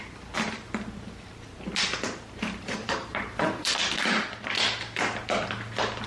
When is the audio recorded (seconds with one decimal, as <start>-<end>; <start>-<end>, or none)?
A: 0.0-3.1; 4.2-6.1